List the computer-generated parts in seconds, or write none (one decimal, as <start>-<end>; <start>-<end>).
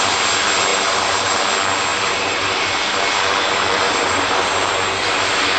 0.7-1.4; 1.9-2.7; 3.4-4.7